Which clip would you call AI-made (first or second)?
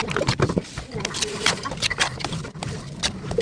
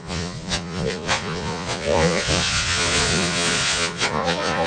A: second